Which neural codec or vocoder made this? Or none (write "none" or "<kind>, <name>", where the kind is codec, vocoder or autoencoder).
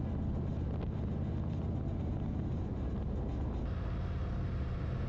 none